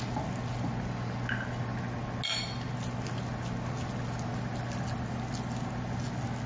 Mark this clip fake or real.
real